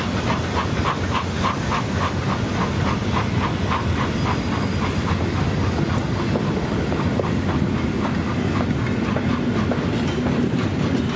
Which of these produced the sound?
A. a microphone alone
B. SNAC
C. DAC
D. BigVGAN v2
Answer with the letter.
A